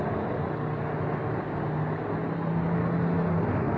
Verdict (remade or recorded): recorded